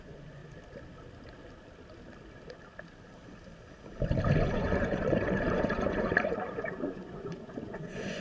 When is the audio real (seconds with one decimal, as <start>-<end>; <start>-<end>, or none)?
0.4-4.4